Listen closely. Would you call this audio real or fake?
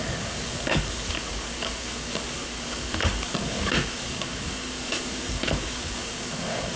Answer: fake